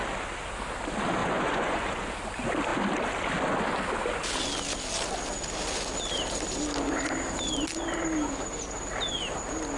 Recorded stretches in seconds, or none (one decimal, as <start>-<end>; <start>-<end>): 0.0-1.2; 2.0-9.8